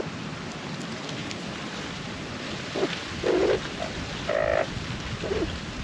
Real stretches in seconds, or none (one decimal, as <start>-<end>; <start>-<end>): 0.0-1.2; 2.6-3.4; 4.1-4.5